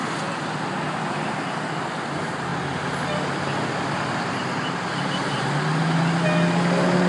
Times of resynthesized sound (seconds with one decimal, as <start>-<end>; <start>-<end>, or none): none